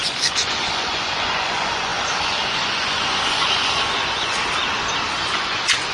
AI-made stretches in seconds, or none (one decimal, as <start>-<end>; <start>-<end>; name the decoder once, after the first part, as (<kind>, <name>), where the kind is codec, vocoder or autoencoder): 0.0-4.4 (vocoder, Vocos); 5.4-5.9